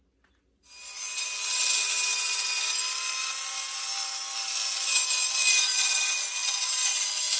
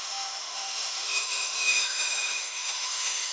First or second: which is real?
first